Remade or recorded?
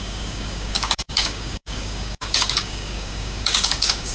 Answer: remade